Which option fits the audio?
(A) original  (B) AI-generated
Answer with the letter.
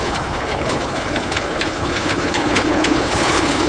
B